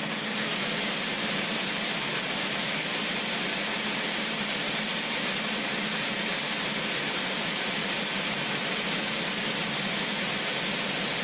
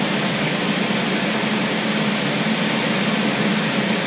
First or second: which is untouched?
second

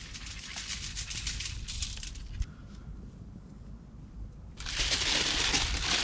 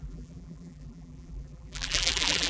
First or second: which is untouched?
first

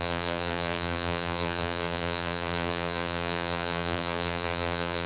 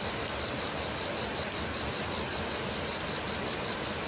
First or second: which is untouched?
second